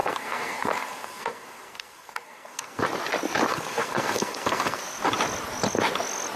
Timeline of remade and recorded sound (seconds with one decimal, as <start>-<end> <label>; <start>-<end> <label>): 0.0-2.8 remade; 2.8-3.5 recorded; 3.5-4.8 remade; 4.8-6.4 recorded